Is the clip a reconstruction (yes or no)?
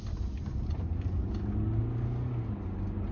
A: no